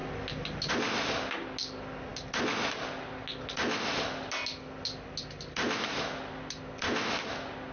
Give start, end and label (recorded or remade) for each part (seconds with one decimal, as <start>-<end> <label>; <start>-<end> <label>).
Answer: 0.0-7.7 recorded